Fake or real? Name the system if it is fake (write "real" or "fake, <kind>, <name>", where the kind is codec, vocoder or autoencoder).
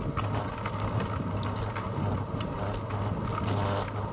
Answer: real